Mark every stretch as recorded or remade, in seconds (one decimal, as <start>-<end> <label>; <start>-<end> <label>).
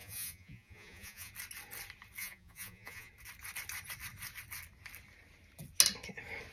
0.0-1.3 remade; 1.3-2.2 recorded; 2.2-3.1 remade; 3.1-6.5 recorded